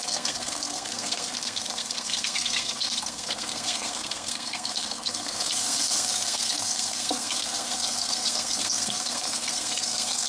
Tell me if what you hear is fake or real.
fake